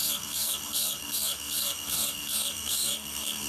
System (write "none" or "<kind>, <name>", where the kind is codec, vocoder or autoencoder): codec, SNAC